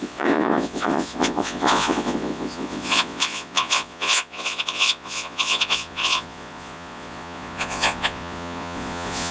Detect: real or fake fake